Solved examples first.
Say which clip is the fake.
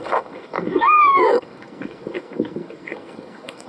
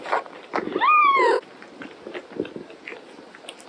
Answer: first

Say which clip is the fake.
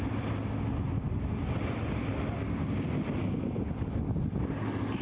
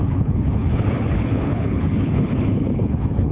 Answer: second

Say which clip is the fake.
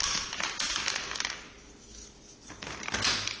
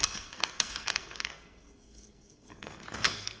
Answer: second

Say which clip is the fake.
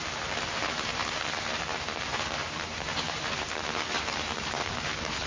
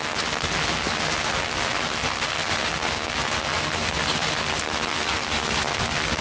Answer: first